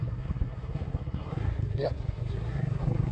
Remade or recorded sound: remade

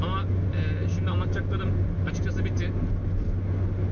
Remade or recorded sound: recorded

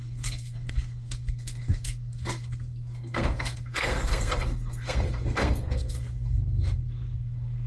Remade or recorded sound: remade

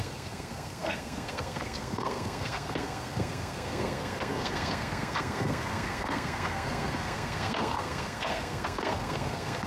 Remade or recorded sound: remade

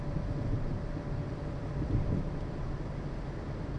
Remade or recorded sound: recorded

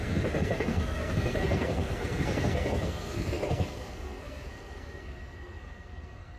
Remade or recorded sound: remade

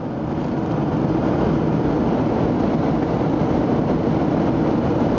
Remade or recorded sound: recorded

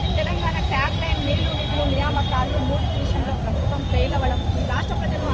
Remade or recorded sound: recorded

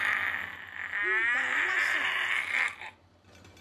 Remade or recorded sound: recorded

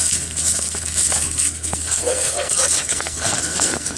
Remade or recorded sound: remade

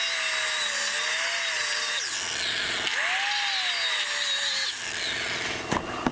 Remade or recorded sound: recorded